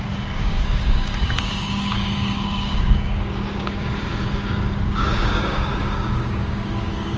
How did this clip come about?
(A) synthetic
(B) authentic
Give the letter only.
A